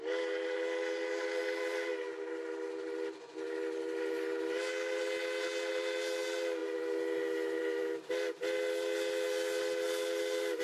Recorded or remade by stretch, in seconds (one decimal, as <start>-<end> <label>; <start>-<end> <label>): 0.0-10.6 recorded